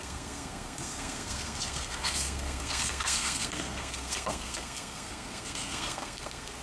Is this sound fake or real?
fake